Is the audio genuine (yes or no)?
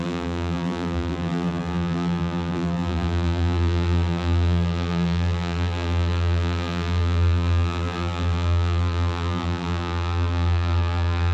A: no